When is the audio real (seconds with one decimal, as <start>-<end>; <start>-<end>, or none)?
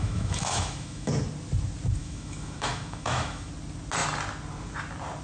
1.1-2.0; 3.5-5.2